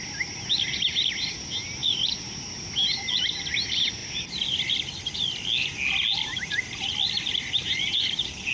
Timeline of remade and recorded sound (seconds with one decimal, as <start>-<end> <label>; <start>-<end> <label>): 0.0-4.0 recorded; 4.0-5.1 remade; 5.1-7.6 recorded; 7.6-8.5 remade